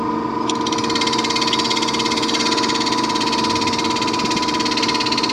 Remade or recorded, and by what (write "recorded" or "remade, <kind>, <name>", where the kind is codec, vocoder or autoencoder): recorded